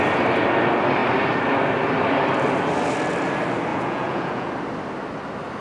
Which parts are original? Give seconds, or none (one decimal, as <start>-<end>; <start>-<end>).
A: 0.0-3.7; 4.5-5.6